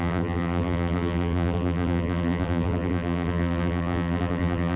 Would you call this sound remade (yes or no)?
yes